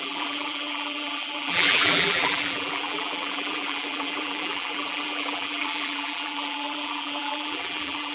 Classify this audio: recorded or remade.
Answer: remade